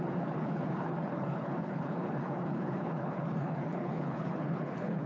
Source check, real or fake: fake